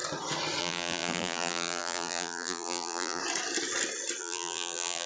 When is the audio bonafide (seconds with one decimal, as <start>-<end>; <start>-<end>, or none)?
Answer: 0.0-0.6; 3.2-4.2